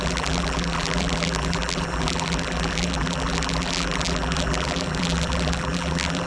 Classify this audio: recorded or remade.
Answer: remade